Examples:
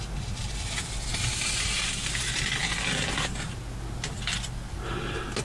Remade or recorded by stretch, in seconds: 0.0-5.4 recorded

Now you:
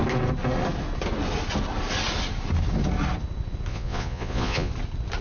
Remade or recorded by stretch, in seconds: 0.0-3.7 recorded; 3.7-4.7 remade; 4.7-5.2 recorded

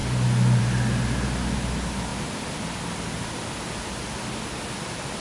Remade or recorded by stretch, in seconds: 0.0-5.2 recorded

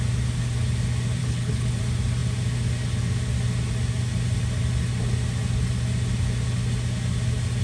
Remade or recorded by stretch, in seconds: 0.0-1.2 recorded; 1.2-1.8 remade; 1.8-7.6 recorded